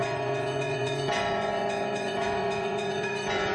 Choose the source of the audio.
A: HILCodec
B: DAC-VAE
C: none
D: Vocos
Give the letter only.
D